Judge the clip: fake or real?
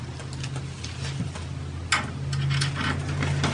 real